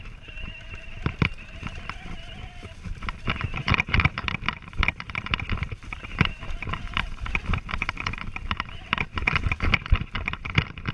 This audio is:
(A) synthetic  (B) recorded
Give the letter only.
A